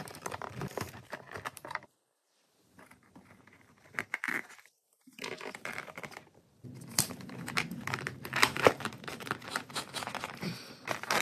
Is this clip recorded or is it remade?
remade